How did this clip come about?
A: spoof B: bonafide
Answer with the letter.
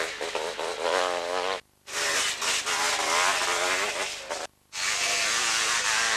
B